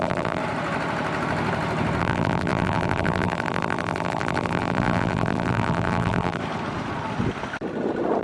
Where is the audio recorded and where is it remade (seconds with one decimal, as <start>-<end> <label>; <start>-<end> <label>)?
0.0-0.4 remade; 0.4-2.0 recorded; 2.0-6.4 remade; 6.4-8.2 recorded